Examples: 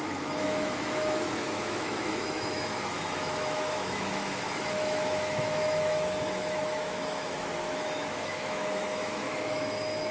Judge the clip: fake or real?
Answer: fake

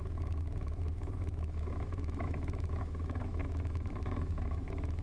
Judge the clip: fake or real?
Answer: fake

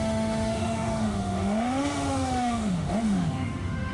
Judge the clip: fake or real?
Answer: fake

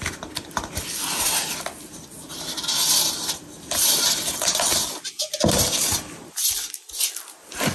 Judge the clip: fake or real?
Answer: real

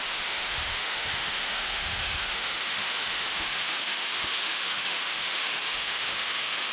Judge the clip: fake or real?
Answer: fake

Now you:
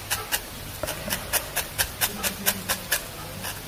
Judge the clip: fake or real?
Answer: real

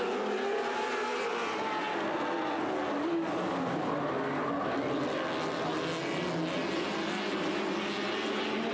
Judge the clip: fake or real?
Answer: real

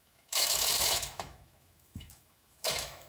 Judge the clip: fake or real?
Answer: fake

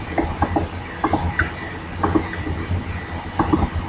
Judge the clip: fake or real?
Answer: real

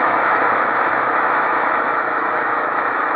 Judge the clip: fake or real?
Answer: fake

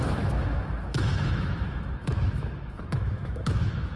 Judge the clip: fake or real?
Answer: fake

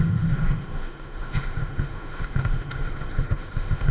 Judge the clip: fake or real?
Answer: fake